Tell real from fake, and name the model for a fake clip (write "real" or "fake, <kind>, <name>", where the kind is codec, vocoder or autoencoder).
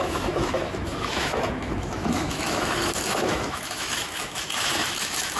fake, autoencoder, DAC-VAE